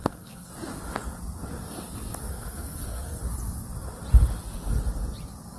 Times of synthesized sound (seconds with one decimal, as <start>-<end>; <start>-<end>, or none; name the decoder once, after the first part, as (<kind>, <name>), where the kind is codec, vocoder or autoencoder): 0.0-0.5 (codec, SNAC); 2.3-3.2